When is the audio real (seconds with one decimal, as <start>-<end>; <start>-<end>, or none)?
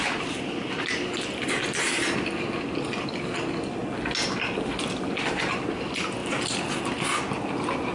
0.0-7.9